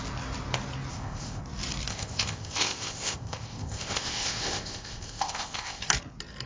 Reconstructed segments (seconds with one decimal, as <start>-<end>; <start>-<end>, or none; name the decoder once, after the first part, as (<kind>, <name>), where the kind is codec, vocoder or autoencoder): 0.9-1.4 (codec, ZipCodec); 1.9-5.8